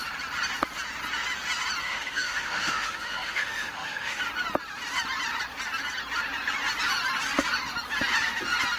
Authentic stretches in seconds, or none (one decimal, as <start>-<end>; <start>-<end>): 0.0-1.8; 4.2-8.8